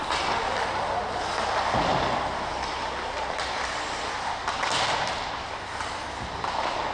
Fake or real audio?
real